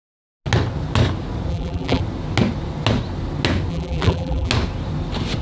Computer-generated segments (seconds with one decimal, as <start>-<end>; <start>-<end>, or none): 1.5-2.0; 3.7-4.5